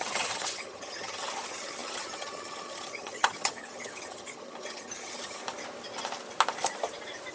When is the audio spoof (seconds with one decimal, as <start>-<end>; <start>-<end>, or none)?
0.0-5.4

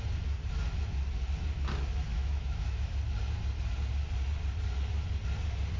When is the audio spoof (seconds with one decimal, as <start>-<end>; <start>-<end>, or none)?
2.1-2.9